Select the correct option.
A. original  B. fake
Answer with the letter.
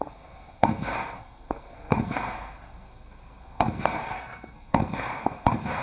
B